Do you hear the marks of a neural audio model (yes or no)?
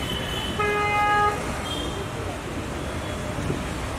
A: no